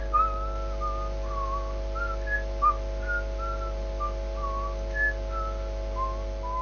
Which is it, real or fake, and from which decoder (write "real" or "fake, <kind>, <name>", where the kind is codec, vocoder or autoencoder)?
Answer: real